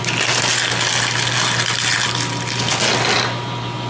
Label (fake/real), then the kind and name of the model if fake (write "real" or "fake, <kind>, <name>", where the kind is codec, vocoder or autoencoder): real